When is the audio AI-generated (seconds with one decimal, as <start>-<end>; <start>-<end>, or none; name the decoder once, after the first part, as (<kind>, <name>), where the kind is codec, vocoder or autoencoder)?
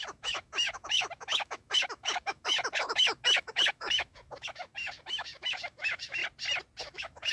0.0-6.2 (autoencoder, DAC-VAE); 6.8-7.3